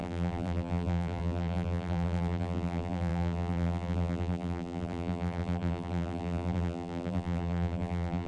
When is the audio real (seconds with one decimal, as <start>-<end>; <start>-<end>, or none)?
none